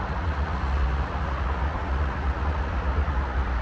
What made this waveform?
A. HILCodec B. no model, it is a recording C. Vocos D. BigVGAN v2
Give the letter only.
C